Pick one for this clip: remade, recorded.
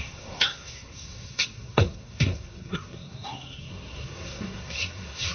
remade